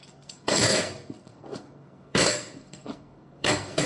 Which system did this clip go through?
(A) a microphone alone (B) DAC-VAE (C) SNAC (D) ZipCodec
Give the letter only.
C